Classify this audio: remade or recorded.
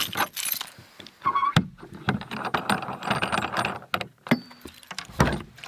recorded